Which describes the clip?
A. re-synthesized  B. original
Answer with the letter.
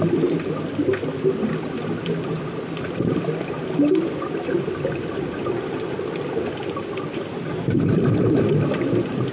B